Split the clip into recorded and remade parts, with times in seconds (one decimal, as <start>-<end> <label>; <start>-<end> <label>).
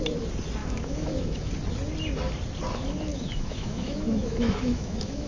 0.0-0.6 recorded; 0.6-1.5 remade; 1.5-3.1 recorded; 3.1-5.3 remade